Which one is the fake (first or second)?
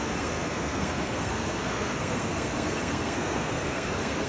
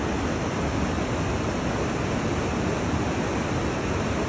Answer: first